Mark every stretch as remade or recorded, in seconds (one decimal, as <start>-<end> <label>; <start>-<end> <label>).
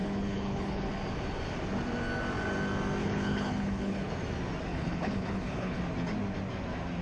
0.0-0.9 remade; 0.9-3.0 recorded; 3.0-4.1 remade; 4.1-4.7 recorded; 4.7-5.8 remade; 5.8-7.0 recorded